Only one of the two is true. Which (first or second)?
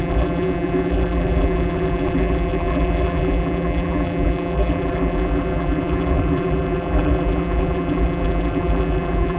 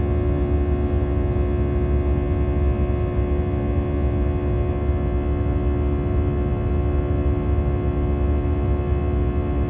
second